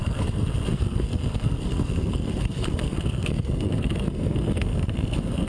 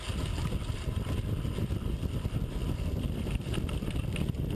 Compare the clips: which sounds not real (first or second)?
first